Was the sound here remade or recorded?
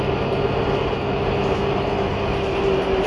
recorded